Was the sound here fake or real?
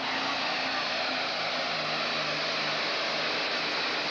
real